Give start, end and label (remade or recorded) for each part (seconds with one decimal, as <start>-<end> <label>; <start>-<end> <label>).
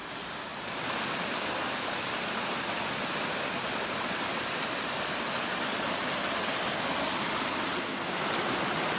0.0-9.0 recorded